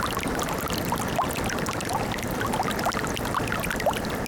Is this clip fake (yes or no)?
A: no